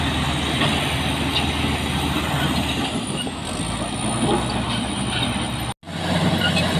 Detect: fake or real real